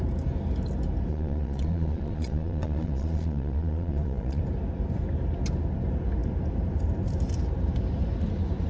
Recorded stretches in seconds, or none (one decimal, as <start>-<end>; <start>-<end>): 0.0-1.1; 4.4-8.7